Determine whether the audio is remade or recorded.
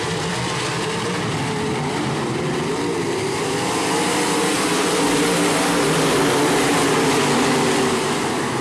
remade